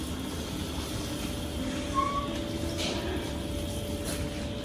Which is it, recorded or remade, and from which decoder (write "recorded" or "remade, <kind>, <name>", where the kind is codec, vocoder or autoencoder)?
recorded